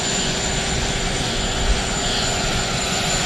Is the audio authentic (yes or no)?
no